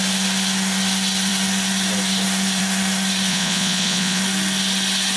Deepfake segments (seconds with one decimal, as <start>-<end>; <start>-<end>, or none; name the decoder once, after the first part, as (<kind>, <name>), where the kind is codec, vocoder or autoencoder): 3.3-4.2 (vocoder, Vocos)